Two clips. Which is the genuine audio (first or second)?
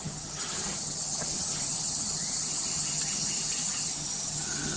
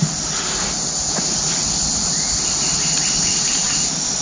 second